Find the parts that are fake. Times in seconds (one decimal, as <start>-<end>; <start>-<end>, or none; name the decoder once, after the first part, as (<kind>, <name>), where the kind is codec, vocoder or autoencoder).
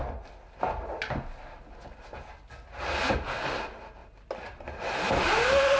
4.0-4.6 (vocoder, BigVGAN v2)